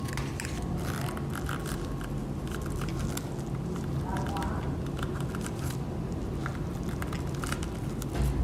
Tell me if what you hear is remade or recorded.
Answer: recorded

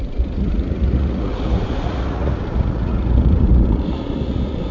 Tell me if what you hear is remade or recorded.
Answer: remade